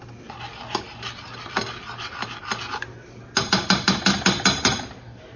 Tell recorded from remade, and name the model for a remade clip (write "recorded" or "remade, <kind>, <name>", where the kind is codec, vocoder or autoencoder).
recorded